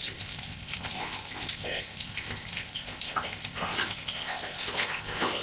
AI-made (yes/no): yes